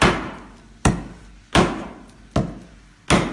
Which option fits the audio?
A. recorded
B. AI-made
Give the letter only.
A